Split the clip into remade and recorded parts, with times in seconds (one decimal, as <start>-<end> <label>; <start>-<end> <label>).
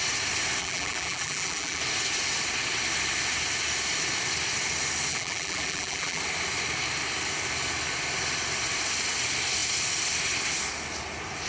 0.0-0.6 recorded; 0.6-1.8 remade; 1.8-5.1 recorded; 5.1-6.2 remade; 6.2-11.5 recorded